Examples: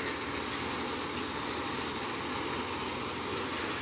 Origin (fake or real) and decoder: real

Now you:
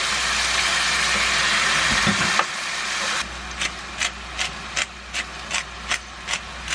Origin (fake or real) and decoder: real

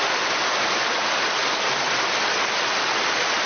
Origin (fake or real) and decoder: real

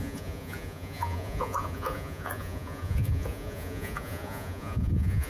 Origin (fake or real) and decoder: fake, vocoder, Vocos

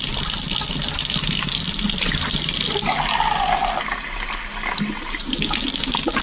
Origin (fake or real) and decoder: real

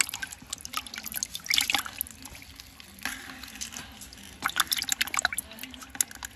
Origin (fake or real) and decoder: real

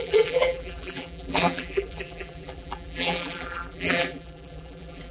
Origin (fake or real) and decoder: fake, vocoder, BigVGAN v2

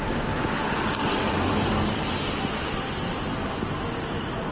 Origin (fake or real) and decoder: real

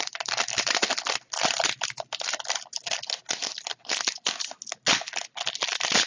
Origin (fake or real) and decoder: real